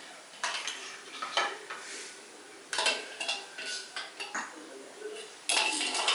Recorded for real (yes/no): yes